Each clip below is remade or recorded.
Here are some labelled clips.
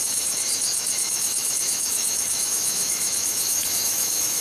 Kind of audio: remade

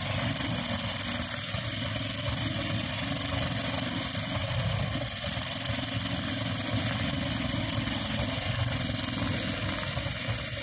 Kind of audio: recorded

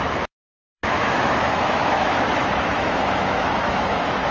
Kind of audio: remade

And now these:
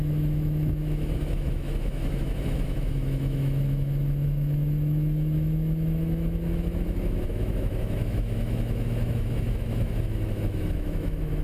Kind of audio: remade